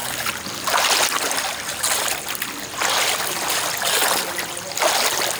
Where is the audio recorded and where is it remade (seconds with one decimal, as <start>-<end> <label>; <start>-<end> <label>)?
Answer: 0.0-5.4 recorded